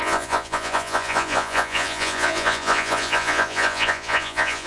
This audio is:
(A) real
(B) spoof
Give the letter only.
B